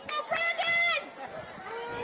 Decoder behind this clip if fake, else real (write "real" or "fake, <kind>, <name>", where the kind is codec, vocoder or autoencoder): real